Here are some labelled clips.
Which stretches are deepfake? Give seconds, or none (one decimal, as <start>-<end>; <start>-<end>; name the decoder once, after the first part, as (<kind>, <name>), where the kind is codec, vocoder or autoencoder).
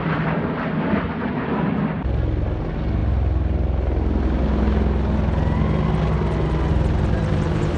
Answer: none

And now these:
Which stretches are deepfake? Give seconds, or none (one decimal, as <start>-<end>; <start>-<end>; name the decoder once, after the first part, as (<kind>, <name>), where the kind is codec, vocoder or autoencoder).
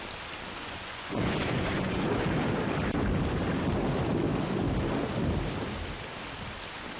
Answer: 0.6-2.1 (vocoder, Vocos)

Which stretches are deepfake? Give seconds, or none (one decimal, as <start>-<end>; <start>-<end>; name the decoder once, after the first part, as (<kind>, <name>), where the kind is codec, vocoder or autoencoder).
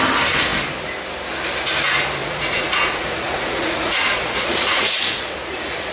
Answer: 2.2-5.9 (vocoder, Vocos)